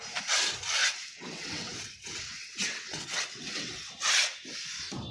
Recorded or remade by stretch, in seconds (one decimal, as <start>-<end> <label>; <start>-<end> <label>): 0.0-0.8 recorded; 0.8-3.9 remade; 3.9-5.1 recorded